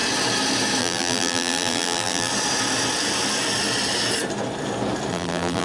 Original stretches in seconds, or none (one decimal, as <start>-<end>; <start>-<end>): 0.0-0.8; 2.3-5.1